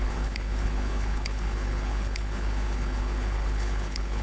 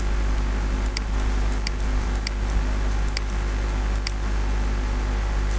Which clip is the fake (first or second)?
first